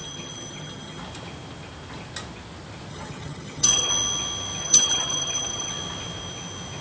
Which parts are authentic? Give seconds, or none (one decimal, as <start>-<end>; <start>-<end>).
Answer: 1.0-2.9; 3.9-4.6; 5.7-6.8